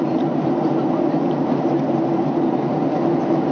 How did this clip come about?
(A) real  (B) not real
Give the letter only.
A